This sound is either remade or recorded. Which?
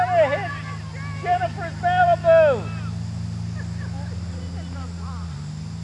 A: recorded